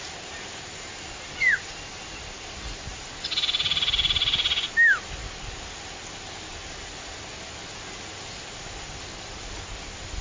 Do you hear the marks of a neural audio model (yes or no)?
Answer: no